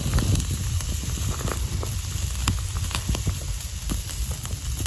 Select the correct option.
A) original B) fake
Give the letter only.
A